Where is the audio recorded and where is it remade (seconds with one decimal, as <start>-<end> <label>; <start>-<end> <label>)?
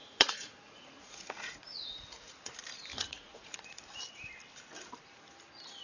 0.0-2.5 remade; 2.5-2.9 recorded; 2.9-3.8 remade; 3.8-5.8 recorded